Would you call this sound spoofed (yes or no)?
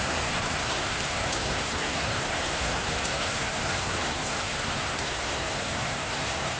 yes